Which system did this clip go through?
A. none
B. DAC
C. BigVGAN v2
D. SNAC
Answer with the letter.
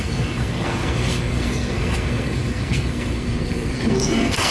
D